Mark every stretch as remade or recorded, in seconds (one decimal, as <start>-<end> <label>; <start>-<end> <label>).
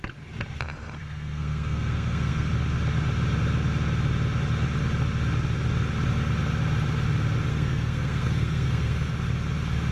0.0-1.0 recorded; 1.0-2.5 remade; 2.5-7.5 recorded; 7.5-9.1 remade; 9.1-9.9 recorded